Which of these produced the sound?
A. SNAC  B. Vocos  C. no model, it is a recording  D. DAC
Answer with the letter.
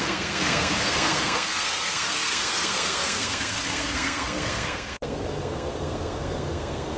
A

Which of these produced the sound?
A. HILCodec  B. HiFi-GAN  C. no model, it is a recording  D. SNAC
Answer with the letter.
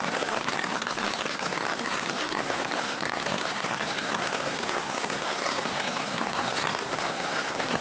D